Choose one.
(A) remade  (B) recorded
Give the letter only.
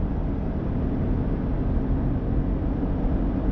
B